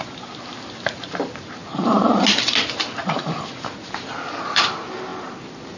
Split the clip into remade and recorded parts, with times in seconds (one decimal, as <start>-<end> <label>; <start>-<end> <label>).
0.0-5.8 recorded